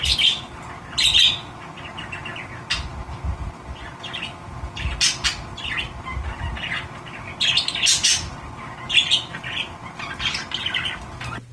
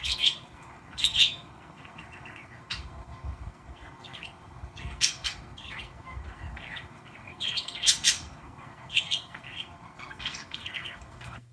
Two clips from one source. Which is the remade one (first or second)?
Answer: second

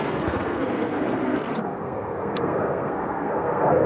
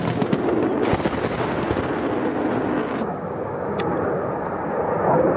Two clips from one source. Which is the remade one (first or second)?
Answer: first